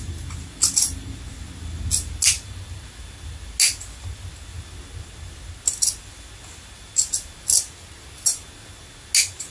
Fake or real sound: real